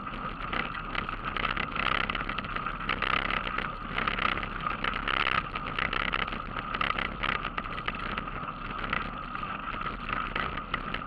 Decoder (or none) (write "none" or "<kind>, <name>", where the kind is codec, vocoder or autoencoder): none